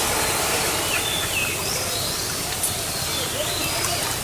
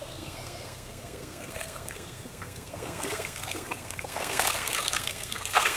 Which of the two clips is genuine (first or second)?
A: first